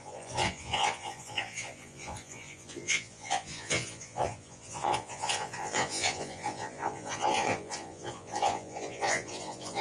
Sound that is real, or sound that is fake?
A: fake